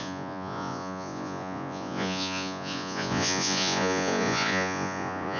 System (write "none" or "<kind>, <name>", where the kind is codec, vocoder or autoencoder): vocoder, Vocos